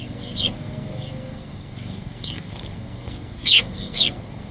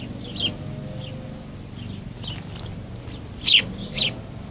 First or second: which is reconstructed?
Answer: first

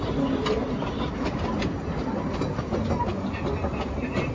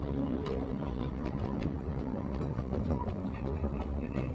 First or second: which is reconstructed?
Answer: second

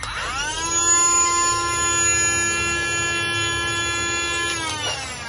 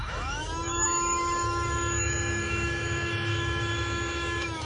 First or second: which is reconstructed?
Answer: second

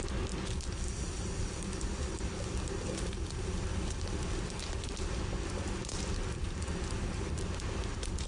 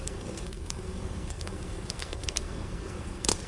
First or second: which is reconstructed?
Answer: second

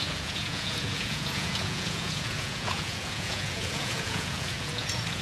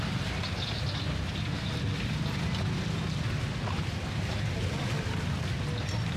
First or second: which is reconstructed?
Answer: first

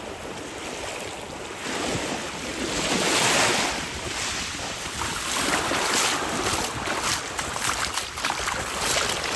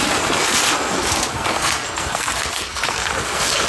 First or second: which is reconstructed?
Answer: second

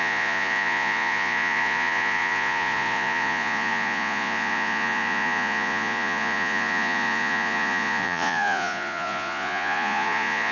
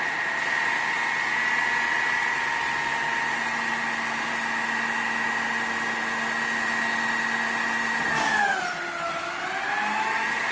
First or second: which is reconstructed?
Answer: first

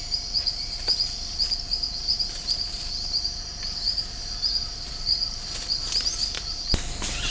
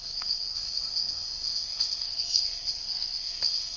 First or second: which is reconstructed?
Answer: second